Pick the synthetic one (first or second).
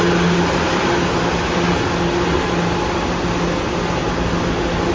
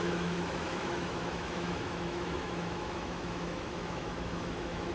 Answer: second